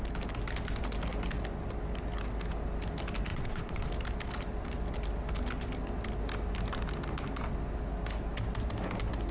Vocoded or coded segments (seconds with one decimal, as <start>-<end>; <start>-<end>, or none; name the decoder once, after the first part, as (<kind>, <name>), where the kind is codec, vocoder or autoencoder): 3.3-3.9 (vocoder, Vocos)